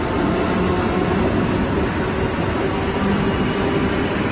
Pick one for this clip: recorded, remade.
recorded